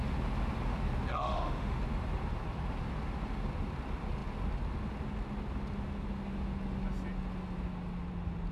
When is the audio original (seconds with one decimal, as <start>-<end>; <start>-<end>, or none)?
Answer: 0.0-1.1; 1.8-8.5